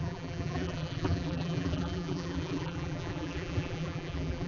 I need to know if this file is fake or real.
fake